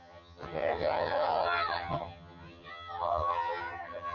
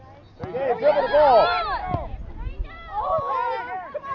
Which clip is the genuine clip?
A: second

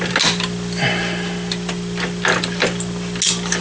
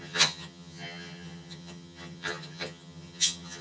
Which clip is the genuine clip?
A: first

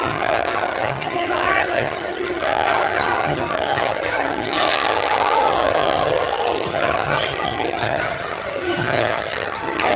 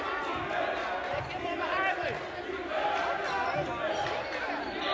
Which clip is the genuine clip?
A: second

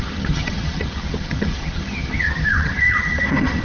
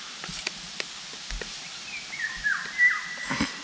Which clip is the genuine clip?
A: second